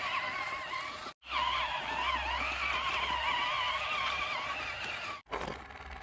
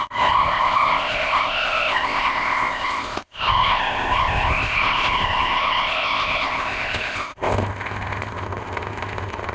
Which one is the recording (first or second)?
first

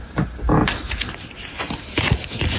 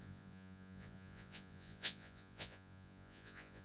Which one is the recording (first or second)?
first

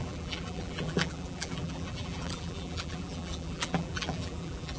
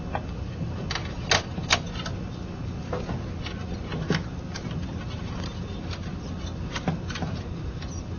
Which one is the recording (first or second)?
second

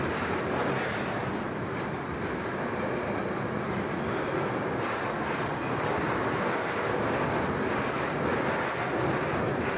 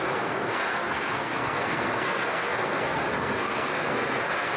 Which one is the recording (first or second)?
first